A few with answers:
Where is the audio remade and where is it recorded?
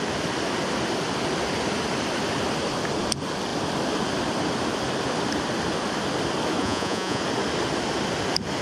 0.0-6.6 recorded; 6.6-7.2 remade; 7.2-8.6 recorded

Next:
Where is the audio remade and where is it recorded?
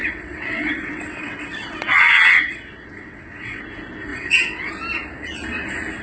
0.0-3.6 remade; 3.6-4.1 recorded; 4.1-4.7 remade; 4.7-6.0 recorded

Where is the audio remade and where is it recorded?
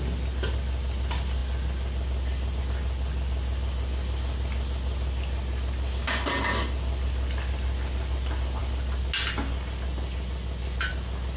0.0-11.4 recorded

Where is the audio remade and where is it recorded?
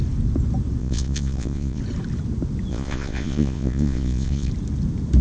0.0-0.8 recorded; 0.8-1.8 remade; 1.8-2.7 recorded; 2.7-4.5 remade; 4.5-5.2 recorded